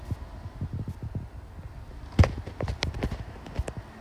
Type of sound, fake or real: real